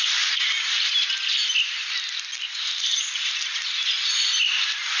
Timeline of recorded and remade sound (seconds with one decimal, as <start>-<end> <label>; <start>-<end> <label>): 0.0-5.0 recorded